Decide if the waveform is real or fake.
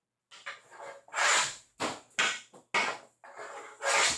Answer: real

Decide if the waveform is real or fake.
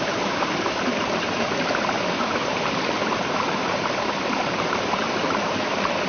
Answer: fake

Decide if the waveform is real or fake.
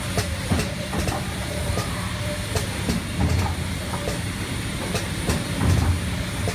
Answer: fake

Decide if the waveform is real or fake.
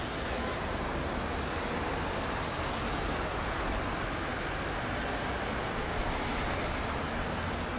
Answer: real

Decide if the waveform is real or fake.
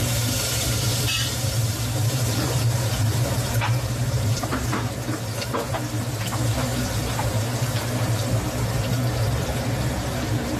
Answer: fake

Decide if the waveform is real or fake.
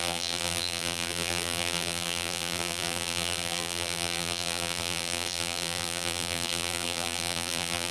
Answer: fake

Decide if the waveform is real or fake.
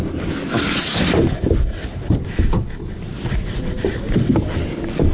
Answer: real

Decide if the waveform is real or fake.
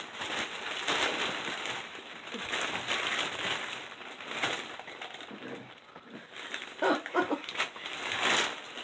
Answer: real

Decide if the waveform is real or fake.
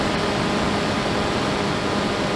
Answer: real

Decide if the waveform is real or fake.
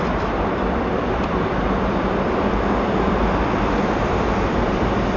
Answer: fake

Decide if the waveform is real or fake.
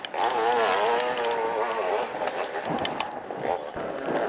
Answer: real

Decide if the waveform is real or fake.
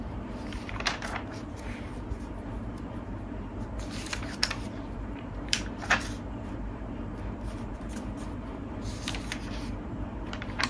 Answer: fake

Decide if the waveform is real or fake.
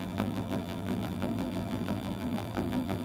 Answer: fake